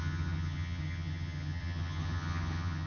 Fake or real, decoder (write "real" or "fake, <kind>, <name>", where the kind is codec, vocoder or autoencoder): fake, vocoder, HiFi-GAN